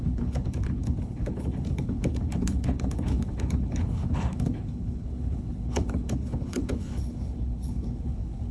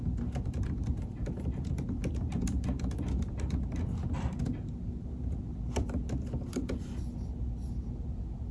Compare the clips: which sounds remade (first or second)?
first